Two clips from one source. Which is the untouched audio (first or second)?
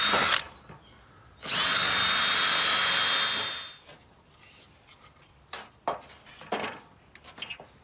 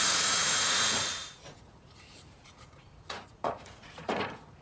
first